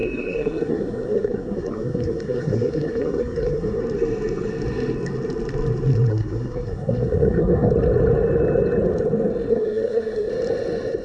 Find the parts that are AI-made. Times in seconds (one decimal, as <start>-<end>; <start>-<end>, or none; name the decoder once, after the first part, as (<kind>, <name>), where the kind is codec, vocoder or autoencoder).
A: 0.0-3.8 (codec, SNAC); 6.1-7.7; 9.5-10.3